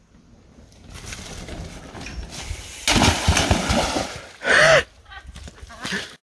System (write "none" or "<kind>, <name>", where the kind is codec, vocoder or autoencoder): none